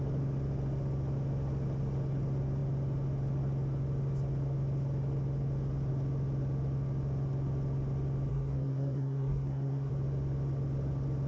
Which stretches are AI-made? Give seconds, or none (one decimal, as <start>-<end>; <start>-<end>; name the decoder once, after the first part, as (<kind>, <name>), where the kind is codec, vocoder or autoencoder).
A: 8.3-9.9 (codec, SNAC)